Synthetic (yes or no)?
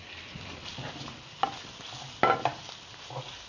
no